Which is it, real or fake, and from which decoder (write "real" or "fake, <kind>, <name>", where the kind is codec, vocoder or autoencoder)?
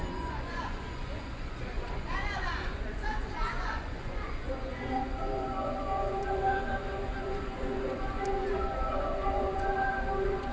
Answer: fake, vocoder, Vocos